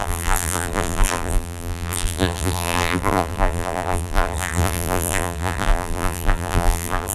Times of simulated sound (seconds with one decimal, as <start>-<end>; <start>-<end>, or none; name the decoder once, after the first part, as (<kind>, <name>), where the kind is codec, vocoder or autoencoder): 0.0-7.1 (vocoder, BigVGAN v2)